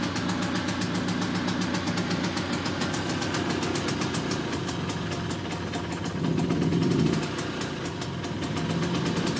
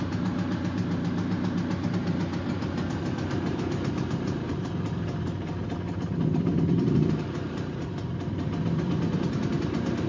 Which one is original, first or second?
first